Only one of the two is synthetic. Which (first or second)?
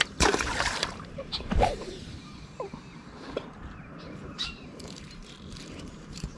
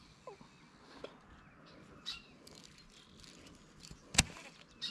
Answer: first